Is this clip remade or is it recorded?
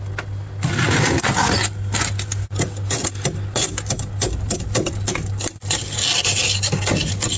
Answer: recorded